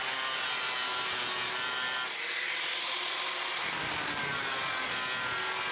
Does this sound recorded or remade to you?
recorded